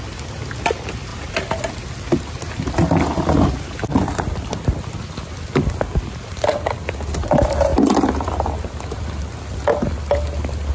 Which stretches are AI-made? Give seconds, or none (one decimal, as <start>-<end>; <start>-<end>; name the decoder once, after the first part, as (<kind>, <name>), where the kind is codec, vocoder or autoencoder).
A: none